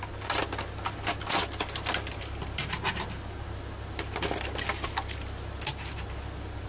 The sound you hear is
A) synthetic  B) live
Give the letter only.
B